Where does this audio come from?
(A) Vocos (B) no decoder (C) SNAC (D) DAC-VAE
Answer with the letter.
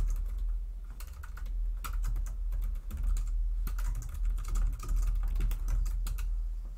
B